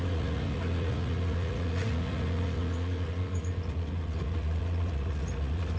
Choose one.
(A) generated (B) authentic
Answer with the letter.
A